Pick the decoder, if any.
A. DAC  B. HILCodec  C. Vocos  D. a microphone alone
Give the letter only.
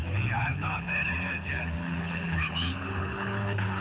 B